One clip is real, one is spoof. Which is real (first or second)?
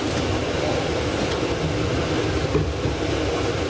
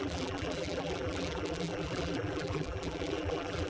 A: first